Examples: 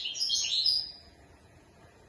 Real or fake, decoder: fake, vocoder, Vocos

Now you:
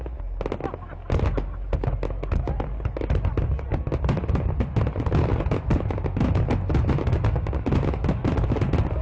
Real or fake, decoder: real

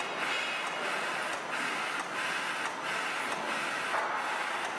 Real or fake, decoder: real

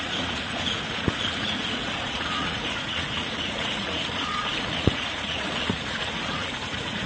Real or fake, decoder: fake, vocoder, Vocos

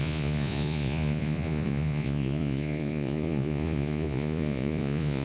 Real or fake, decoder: fake, vocoder, Vocos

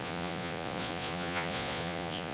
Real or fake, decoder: fake, vocoder, Vocos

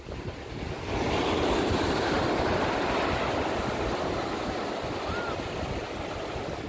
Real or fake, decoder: real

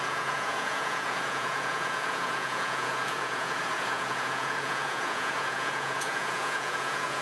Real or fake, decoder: fake, vocoder, Vocos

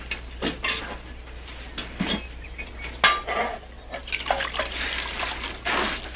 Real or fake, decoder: real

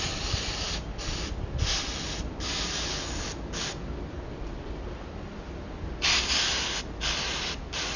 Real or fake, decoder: real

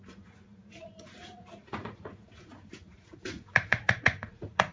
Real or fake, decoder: fake, vocoder, Vocos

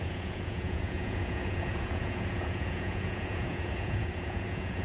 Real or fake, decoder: fake, vocoder, Vocos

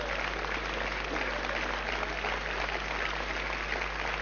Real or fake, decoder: real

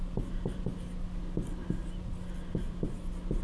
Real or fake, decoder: real